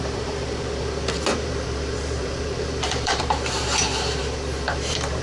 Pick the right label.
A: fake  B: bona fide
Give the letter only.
A